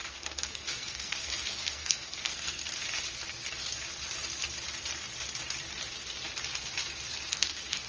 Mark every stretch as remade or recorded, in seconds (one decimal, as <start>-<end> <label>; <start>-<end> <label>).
0.0-2.6 remade; 2.6-7.3 recorded; 7.3-7.9 remade